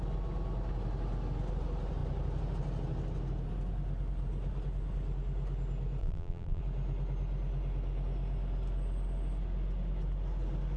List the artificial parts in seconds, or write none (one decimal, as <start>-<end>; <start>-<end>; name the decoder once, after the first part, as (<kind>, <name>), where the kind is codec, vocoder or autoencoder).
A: 6.0-6.6 (vocoder, BigVGAN v2)